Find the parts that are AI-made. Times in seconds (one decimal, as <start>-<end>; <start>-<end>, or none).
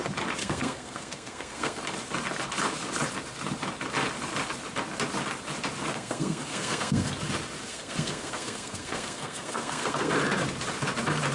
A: 0.4-1.8; 5.9-7.1; 7.7-10.1